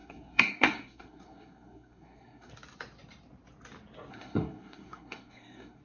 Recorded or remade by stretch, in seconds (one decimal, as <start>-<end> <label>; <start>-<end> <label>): 0.0-2.5 remade; 2.5-4.1 recorded; 4.1-5.8 remade